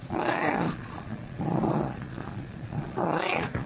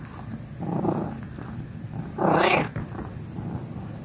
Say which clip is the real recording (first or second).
second